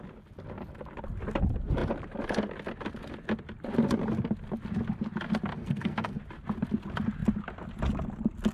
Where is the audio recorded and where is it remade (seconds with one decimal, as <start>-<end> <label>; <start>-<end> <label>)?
0.0-5.5 recorded; 5.5-6.2 remade; 6.2-8.5 recorded